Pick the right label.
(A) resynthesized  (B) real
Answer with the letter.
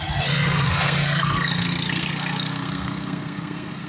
A